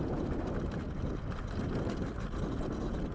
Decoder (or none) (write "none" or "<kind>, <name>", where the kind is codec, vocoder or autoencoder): none